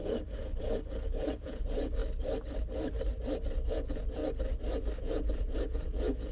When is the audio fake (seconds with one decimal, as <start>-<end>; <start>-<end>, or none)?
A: 0.0-2.0; 3.7-4.2; 5.0-6.3